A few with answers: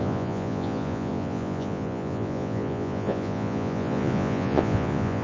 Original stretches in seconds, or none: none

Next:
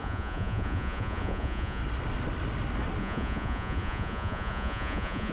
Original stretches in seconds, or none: 1.8-3.0

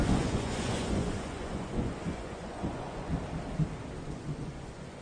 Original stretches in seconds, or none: 3.1-4.0

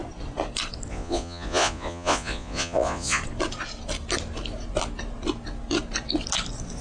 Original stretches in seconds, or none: 0.0-0.9; 3.2-6.8